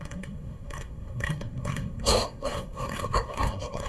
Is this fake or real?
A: fake